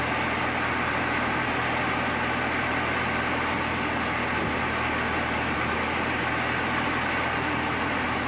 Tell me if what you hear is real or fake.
real